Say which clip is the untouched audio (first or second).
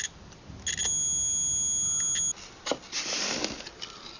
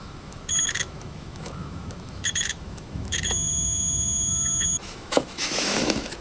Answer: first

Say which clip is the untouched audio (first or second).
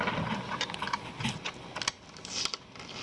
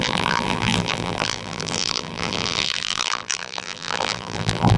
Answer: first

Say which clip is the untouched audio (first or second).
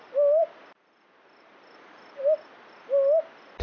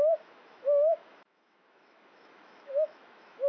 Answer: first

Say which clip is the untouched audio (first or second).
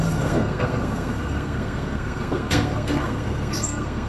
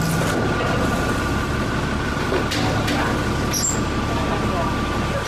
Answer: second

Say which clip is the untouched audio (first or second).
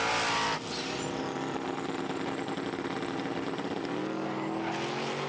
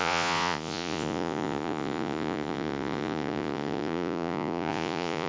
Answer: first